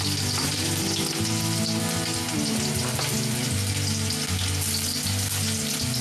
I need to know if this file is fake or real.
fake